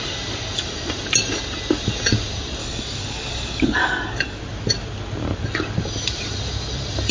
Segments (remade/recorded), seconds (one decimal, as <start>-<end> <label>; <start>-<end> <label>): 0.0-2.6 recorded; 2.6-4.4 remade; 4.4-7.1 recorded